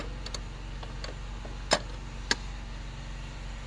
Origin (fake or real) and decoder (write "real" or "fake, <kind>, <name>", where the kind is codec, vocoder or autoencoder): real